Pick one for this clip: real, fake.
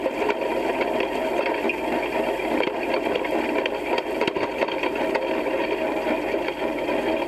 real